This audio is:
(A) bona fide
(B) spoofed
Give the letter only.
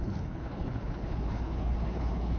B